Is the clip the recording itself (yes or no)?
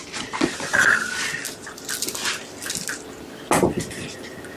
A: yes